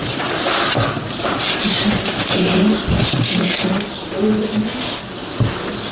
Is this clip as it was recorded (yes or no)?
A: yes